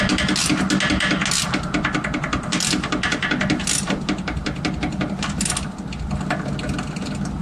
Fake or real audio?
real